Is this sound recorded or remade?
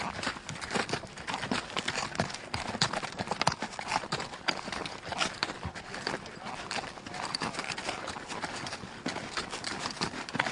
recorded